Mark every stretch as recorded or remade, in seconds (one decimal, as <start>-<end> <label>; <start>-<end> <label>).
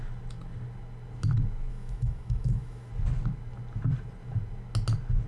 0.0-1.7 recorded; 1.7-2.9 remade; 2.9-5.3 recorded